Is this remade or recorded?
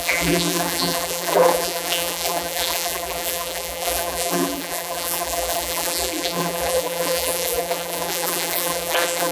remade